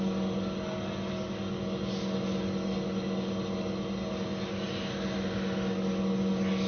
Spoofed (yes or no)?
no